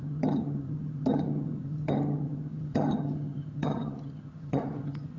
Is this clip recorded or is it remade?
remade